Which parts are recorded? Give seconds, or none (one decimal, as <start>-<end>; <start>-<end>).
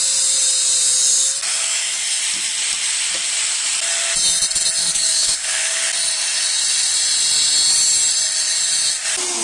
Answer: 0.0-1.5; 2.2-4.8; 5.8-9.4